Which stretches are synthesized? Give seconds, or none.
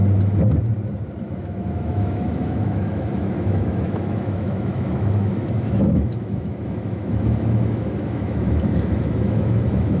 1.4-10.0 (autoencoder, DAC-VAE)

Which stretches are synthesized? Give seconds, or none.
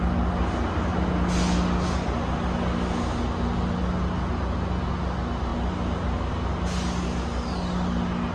none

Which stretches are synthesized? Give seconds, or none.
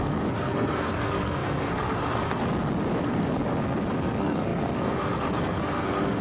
0.0-2.4 (codec, SNAC); 3.0-3.4; 4.0-6.2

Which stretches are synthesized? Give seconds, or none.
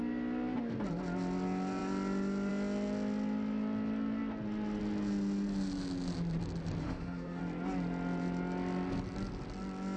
6.8-7.4 (autoencoder, DAC-VAE)